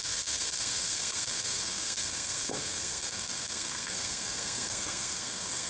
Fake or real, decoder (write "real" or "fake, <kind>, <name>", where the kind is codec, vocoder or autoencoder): fake, codec, SNAC